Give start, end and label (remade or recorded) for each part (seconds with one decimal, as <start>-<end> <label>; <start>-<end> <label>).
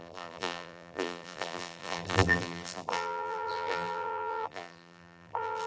0.0-5.7 remade